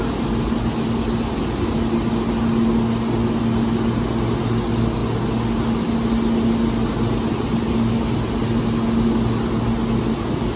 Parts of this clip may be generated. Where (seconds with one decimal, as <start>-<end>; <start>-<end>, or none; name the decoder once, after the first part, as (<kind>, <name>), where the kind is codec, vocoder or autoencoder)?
none